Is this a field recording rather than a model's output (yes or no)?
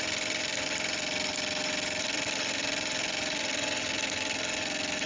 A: yes